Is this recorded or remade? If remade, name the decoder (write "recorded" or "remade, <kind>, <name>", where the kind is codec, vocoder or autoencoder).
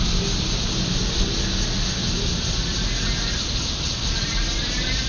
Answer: recorded